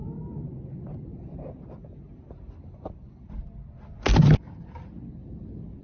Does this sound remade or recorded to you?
recorded